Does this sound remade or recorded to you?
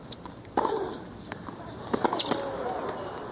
recorded